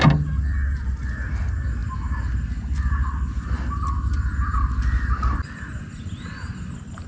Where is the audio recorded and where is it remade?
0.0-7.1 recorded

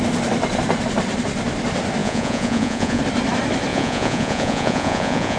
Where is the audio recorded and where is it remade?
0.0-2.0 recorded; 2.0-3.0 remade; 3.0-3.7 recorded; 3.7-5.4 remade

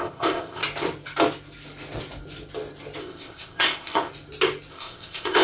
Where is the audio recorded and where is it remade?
0.0-0.6 remade; 0.6-3.0 recorded; 3.0-4.1 remade; 4.1-4.7 recorded; 4.7-5.4 remade

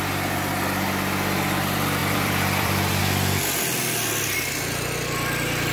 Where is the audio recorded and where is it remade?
0.0-2.0 recorded; 2.0-3.0 remade; 3.0-5.7 recorded

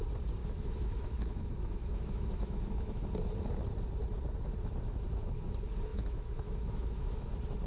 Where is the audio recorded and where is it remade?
0.0-0.4 recorded; 0.4-3.1 remade; 3.1-5.9 recorded; 5.9-7.3 remade; 7.3-7.7 recorded

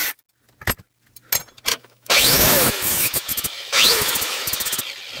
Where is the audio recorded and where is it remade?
0.0-1.7 recorded; 1.7-4.8 remade; 4.8-5.2 recorded

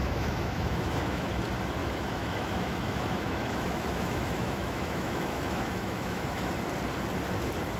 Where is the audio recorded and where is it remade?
0.0-1.3 remade; 1.3-1.8 recorded; 1.8-6.5 remade; 6.5-7.8 recorded

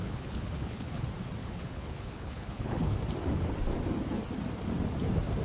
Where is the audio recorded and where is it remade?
0.0-1.0 remade; 1.0-1.4 recorded; 1.4-3.0 remade; 3.0-5.4 recorded